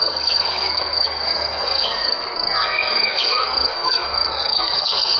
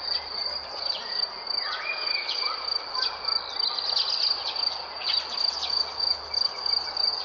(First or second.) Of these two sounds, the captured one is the second